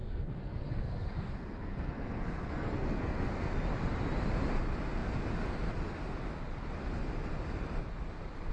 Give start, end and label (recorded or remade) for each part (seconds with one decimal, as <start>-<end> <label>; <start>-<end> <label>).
0.0-3.5 remade; 3.5-8.5 recorded